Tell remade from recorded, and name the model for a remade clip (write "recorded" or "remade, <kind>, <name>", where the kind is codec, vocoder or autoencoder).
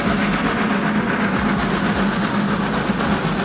recorded